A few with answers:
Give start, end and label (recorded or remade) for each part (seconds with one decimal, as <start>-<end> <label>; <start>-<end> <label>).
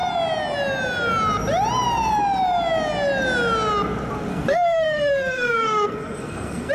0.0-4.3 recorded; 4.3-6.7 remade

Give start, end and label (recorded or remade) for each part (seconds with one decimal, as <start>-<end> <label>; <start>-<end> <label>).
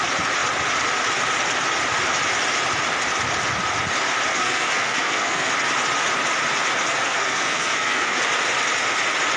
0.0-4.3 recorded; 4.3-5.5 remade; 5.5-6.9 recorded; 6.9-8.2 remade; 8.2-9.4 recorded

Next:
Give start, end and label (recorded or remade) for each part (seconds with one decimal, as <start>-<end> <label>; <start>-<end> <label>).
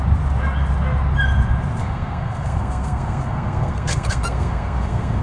0.0-1.8 recorded; 1.8-5.2 remade